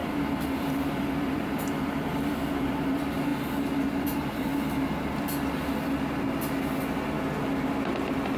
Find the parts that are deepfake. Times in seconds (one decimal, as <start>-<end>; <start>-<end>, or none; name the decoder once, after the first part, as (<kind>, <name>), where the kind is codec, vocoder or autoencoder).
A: 0.0-3.3 (vocoder, BigVGAN v2); 3.9-4.5